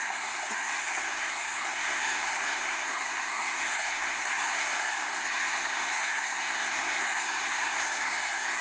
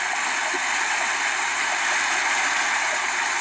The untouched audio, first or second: second